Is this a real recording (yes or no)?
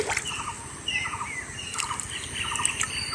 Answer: yes